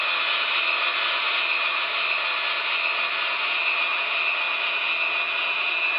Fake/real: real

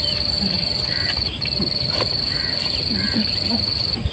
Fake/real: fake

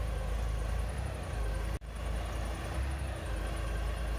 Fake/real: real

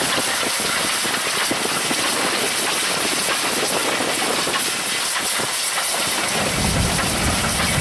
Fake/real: real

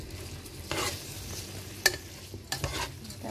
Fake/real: real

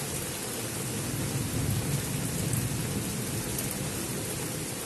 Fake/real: real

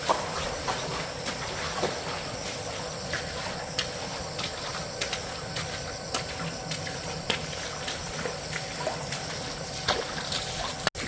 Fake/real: real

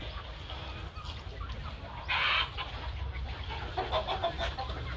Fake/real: real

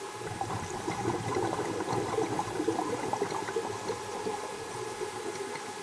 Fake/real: fake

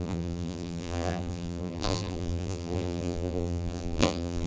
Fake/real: fake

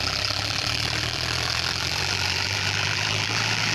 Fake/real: fake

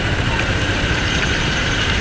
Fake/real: fake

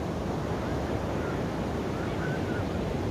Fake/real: real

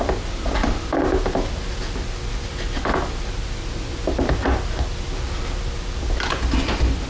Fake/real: real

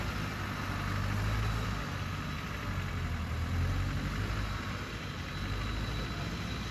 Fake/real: real